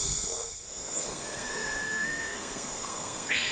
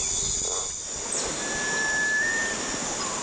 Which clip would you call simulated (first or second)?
first